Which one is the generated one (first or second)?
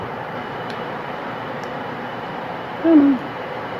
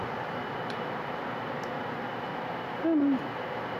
first